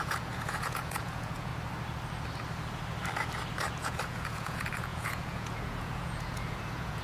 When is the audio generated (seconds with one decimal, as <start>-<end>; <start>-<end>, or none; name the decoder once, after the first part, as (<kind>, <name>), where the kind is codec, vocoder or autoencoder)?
0.0-1.5 (vocoder, Vocos); 3.8-7.0